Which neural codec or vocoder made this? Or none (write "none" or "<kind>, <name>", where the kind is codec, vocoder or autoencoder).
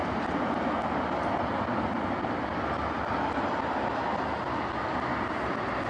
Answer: none